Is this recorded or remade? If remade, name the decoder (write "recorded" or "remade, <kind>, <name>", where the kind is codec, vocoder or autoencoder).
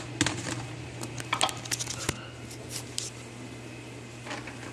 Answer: recorded